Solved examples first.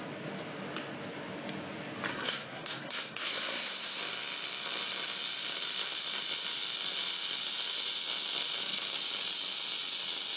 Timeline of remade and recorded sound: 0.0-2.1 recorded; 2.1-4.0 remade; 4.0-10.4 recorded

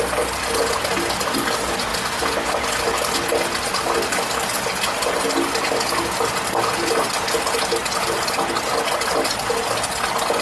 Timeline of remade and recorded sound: 0.0-10.4 recorded

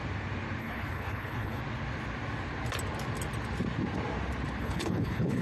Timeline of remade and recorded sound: 0.0-0.6 recorded; 0.6-1.6 remade; 1.6-4.6 recorded; 4.6-5.4 remade

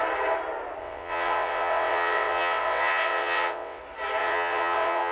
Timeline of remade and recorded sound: 0.0-0.8 recorded; 0.8-3.8 remade; 3.8-4.2 recorded; 4.2-5.1 remade

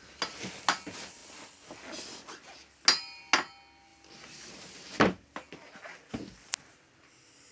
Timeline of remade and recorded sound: 0.0-7.5 recorded

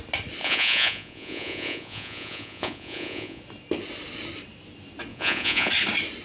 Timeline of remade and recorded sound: 0.0-0.4 recorded; 0.4-3.4 remade; 3.4-5.1 recorded; 5.1-5.7 remade; 5.7-6.2 recorded